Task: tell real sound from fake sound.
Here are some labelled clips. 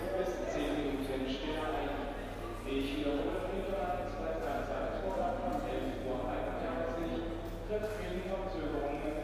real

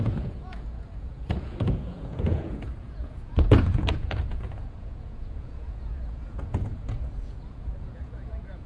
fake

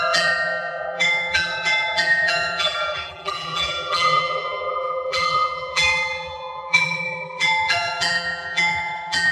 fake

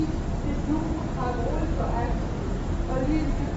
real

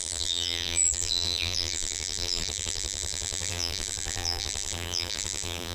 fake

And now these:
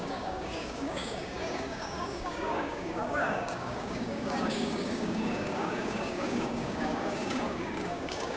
fake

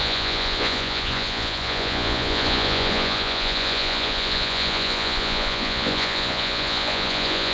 fake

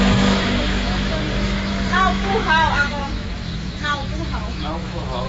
fake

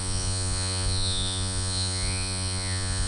fake